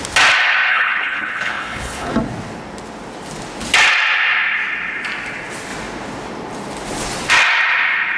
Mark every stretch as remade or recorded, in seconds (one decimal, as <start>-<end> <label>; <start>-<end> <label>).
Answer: 0.0-0.7 recorded; 0.7-2.1 remade; 2.1-8.2 recorded